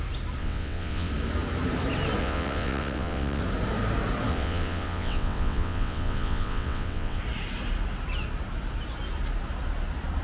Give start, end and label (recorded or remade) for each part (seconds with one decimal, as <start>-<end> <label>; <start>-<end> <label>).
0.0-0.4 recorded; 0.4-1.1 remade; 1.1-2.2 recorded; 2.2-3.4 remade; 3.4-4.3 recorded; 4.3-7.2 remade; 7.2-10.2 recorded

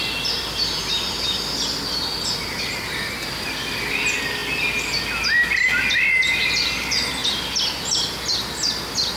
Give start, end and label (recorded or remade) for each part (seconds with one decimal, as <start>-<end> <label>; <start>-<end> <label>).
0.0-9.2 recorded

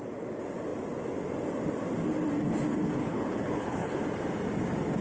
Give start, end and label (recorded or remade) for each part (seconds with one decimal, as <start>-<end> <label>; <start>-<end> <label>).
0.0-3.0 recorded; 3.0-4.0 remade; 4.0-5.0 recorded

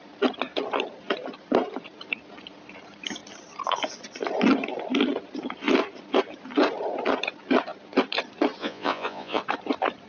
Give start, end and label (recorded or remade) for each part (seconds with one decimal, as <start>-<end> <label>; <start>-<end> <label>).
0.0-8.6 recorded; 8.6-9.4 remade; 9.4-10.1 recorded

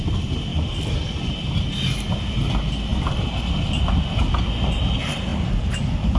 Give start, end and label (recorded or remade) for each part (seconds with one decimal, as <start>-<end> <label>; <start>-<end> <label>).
0.0-6.2 recorded